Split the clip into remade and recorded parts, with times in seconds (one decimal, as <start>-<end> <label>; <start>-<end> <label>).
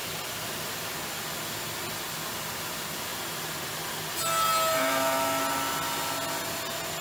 0.0-7.0 recorded